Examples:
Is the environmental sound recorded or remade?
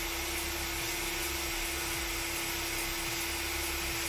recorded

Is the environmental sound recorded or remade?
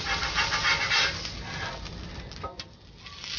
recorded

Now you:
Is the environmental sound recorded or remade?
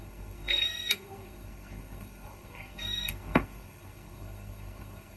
remade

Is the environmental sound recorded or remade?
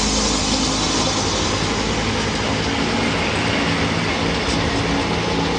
recorded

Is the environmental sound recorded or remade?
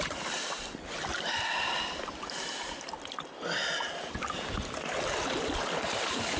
recorded